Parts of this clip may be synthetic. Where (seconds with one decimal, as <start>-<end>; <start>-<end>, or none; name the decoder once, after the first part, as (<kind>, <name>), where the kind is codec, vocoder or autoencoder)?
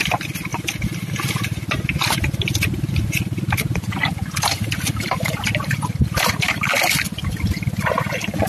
none